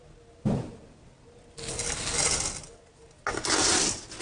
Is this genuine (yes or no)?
yes